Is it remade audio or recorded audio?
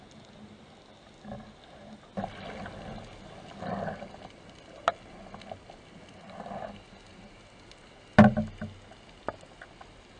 recorded